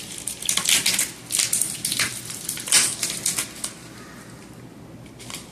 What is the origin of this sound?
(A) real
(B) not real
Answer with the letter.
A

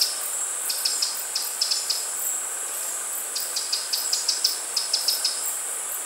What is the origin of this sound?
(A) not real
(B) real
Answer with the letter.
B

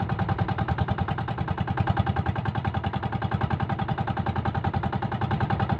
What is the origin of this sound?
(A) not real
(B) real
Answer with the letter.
B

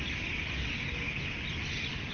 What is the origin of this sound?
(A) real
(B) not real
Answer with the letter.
A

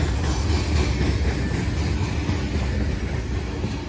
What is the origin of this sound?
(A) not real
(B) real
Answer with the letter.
B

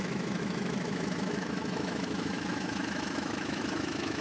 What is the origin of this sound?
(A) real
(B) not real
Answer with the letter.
B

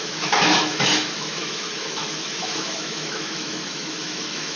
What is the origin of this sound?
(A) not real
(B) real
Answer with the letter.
A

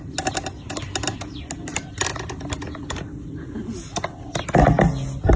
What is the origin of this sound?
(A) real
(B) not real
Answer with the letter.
A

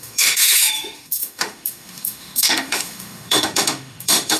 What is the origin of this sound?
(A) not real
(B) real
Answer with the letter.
A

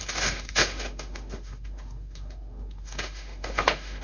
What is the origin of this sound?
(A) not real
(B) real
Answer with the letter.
A